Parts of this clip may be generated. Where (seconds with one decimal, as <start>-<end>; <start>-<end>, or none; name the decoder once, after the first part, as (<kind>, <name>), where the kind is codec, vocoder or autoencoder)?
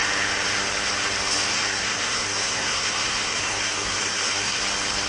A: 1.5-4.6 (codec, SNAC)